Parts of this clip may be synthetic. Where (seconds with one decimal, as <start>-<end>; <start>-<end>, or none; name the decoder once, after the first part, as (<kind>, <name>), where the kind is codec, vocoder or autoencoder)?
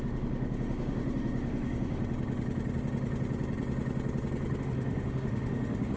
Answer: 0.0-2.0 (autoencoder, DAC-VAE); 4.6-6.0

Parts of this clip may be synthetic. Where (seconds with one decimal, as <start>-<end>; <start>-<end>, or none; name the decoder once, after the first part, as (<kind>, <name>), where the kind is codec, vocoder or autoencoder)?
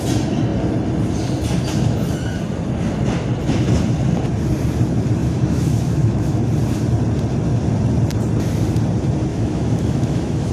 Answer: 5.2-6.5 (autoencoder, DAC-VAE); 9.3-10.5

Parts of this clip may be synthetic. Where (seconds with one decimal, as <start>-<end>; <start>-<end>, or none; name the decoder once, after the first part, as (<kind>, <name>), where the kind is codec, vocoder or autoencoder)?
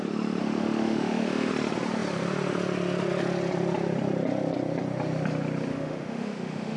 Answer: 0.4-1.5 (autoencoder, DAC-VAE); 5.7-6.8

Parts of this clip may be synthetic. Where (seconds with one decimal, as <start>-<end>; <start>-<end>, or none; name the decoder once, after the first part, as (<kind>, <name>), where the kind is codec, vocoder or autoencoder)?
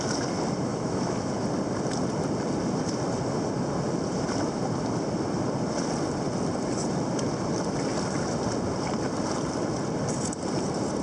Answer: 0.7-1.3 (autoencoder, DAC-VAE)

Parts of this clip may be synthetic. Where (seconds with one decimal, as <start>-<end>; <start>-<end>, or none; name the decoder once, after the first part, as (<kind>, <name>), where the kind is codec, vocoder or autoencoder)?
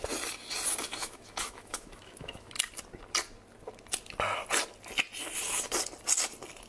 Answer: 1.0-2.5 (autoencoder, DAC-VAE)